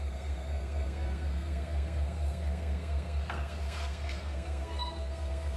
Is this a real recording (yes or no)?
no